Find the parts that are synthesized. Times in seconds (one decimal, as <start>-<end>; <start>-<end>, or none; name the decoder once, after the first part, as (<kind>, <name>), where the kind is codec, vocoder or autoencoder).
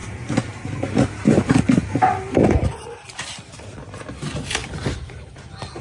0.0-1.6 (vocoder, BigVGAN v2); 2.4-4.1; 4.6-5.3